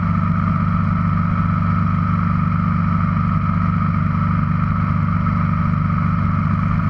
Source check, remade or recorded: recorded